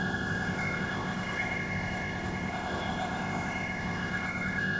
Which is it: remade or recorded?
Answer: remade